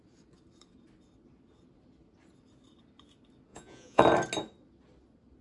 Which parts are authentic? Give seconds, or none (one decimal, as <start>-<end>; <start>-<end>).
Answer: 0.0-3.5; 4.0-5.4